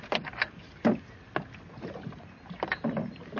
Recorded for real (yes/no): yes